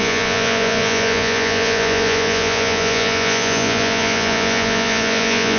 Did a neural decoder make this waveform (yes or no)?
yes